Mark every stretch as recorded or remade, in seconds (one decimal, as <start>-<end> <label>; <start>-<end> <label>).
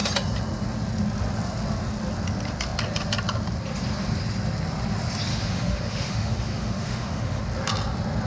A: 0.0-5.3 recorded; 5.3-7.4 remade; 7.4-8.3 recorded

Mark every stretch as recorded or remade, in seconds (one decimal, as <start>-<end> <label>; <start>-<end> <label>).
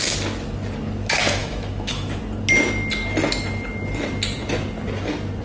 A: 0.0-1.4 recorded; 1.4-2.2 remade; 2.2-5.4 recorded